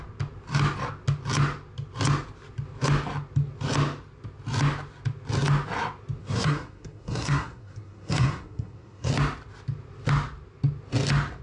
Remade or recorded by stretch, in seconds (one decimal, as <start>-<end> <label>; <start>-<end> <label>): 0.0-6.2 recorded; 6.2-9.1 remade; 9.1-11.4 recorded